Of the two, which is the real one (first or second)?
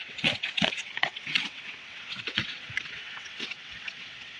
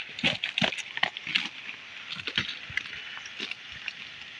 second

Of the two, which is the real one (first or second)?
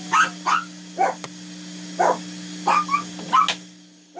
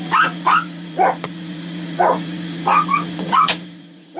first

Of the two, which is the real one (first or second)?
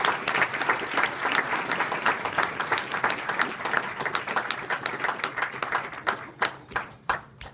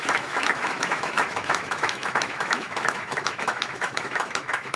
first